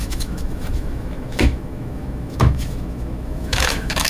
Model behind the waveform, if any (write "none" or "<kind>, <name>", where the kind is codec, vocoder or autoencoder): autoencoder, DAC-VAE